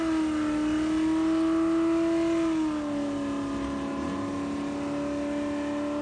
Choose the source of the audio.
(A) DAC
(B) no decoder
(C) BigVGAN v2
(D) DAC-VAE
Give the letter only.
B